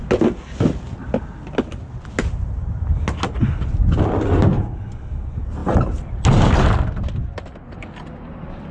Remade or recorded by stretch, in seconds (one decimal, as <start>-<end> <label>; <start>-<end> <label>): 0.0-8.7 recorded